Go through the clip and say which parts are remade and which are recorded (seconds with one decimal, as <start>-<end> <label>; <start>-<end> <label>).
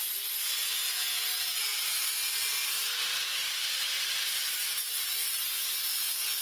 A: 0.0-1.7 recorded; 1.7-4.5 remade; 4.5-5.2 recorded; 5.2-5.8 remade; 5.8-6.4 recorded